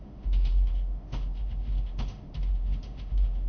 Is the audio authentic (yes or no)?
no